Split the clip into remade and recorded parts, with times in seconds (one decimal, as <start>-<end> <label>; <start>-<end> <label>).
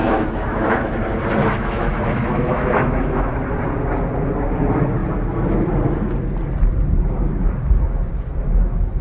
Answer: 0.0-0.9 remade; 0.9-1.4 recorded; 1.4-3.3 remade; 3.3-9.0 recorded